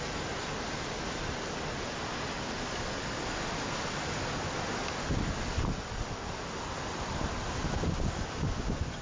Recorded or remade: recorded